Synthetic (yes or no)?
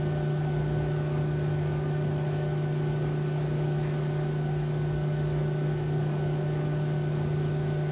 yes